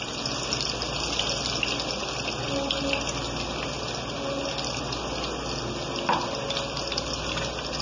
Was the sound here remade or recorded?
recorded